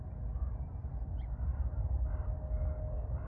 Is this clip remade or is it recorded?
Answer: recorded